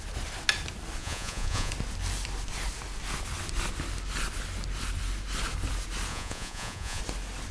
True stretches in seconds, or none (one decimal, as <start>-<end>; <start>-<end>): 0.0-1.0; 1.7-6.1; 7.0-7.5